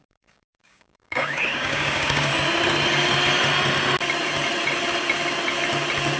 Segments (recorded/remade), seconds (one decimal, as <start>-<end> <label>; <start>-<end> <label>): 0.0-2.3 remade; 2.3-6.2 recorded